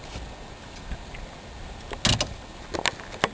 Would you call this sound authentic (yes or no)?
yes